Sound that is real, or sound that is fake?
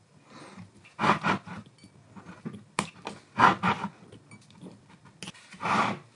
real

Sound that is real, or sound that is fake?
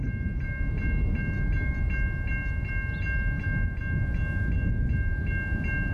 real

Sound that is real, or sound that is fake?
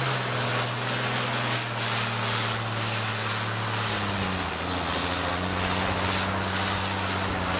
real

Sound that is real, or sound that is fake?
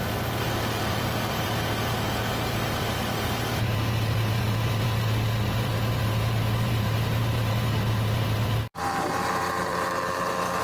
fake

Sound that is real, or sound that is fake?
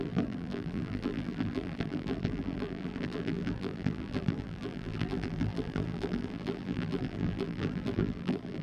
fake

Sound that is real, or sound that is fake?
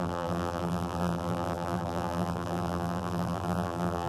fake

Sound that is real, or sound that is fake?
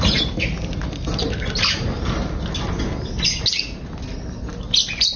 real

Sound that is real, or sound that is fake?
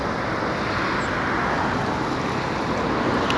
real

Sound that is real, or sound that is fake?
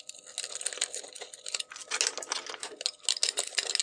real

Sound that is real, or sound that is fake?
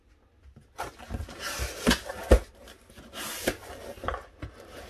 real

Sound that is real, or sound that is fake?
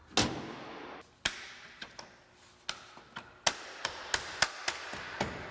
real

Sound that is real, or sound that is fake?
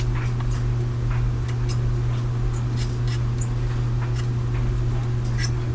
real